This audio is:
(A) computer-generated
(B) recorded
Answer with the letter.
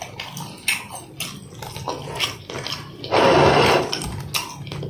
B